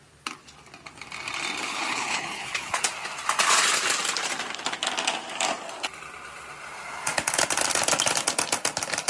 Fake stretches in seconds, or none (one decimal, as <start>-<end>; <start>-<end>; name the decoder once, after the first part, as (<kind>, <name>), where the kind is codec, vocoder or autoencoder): 1.6-2.8 (codec, HILCodec)